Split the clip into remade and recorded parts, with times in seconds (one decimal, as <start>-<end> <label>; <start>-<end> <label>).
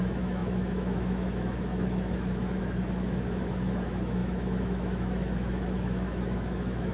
0.0-6.9 remade